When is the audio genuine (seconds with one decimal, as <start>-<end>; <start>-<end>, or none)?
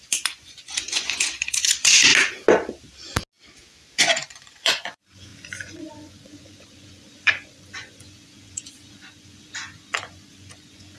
2.1-4.0